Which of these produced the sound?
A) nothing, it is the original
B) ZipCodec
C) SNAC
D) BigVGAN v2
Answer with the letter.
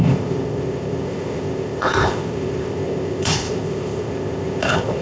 B